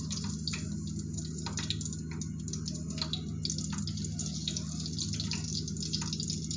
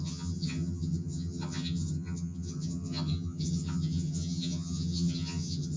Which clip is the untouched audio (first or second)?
first